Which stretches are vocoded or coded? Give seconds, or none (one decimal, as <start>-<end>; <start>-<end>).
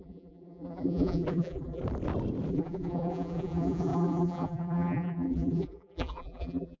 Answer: 0.0-1.8; 2.5-6.8